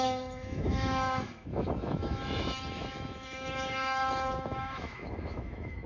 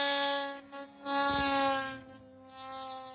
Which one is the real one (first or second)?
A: second